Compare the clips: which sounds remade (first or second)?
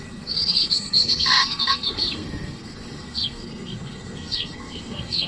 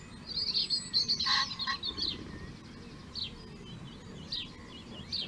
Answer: first